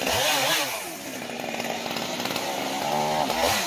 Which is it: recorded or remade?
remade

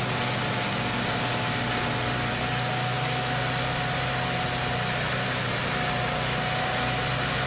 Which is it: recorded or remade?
recorded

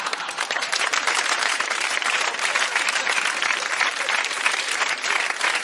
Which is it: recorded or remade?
remade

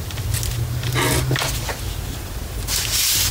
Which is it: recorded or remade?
recorded